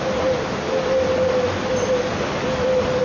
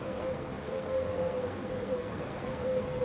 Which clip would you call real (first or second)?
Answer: first